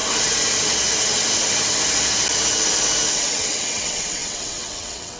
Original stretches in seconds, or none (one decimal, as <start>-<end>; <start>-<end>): 0.0-3.1